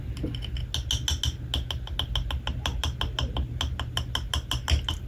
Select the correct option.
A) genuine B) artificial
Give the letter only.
A